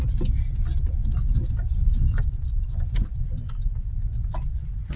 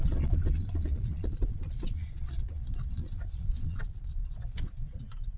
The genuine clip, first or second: first